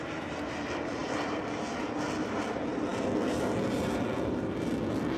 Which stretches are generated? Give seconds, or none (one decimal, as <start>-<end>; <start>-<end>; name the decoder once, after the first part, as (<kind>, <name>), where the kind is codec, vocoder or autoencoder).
none